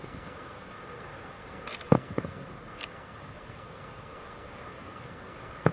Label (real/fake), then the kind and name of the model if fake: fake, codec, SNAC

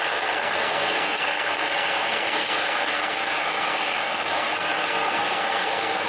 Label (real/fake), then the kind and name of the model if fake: fake, codec, SNAC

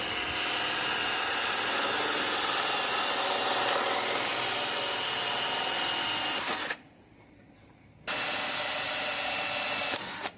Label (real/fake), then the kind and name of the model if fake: real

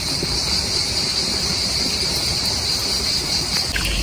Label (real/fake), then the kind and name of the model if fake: real